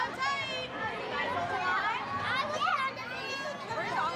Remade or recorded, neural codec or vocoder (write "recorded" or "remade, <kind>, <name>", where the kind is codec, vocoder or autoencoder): recorded